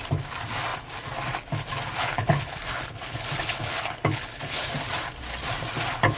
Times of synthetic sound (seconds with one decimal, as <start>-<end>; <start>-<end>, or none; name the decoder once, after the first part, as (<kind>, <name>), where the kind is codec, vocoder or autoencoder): 2.0-4.7 (codec, HILCodec)